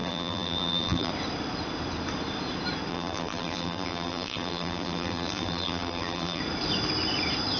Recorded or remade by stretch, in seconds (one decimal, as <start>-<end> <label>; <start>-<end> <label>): 0.0-1.1 remade; 1.1-2.9 recorded; 2.9-6.4 remade; 6.4-7.6 recorded